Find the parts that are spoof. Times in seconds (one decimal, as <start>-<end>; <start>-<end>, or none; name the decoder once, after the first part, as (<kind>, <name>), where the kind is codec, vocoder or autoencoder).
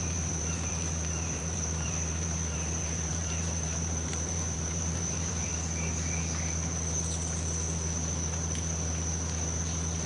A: 0.0-5.5 (vocoder, BigVGAN v2)